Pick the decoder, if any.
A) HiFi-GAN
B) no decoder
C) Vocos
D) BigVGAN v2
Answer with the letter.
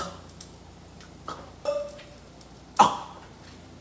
B